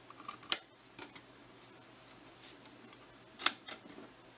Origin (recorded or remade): recorded